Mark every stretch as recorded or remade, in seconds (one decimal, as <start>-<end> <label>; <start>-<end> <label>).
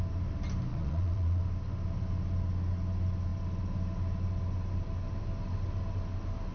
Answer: 0.0-0.7 recorded; 0.7-1.4 remade; 1.4-6.5 recorded